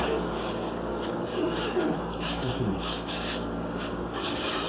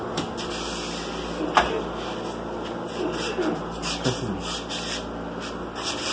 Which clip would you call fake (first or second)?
first